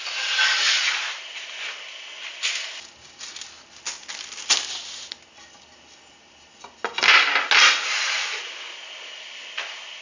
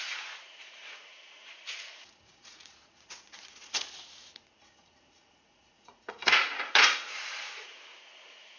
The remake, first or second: second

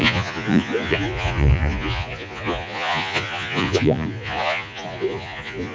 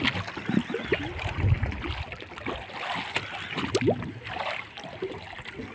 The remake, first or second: first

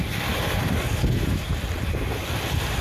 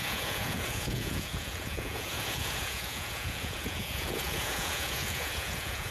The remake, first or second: second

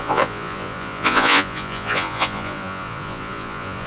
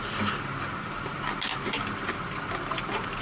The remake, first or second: first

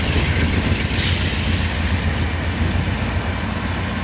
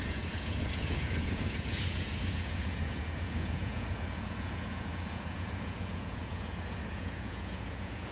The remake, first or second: second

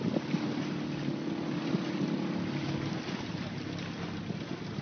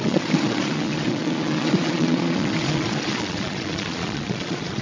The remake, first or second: second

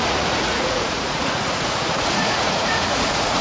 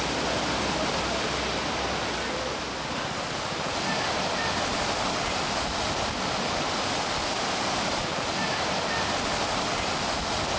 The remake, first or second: first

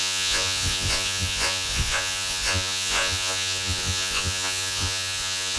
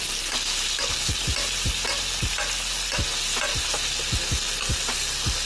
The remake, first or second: first